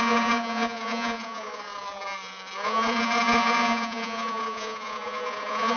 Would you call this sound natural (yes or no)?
no